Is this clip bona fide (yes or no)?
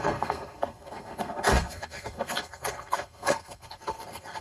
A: no